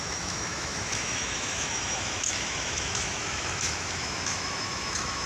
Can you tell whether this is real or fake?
fake